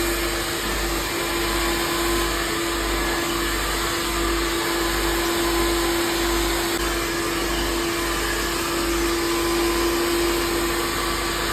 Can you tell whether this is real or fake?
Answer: real